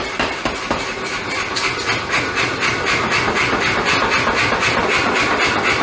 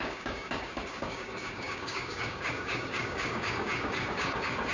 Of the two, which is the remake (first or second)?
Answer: second